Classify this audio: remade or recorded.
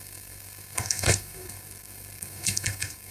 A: remade